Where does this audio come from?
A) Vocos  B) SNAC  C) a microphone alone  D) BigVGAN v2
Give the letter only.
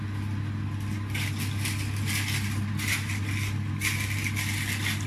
C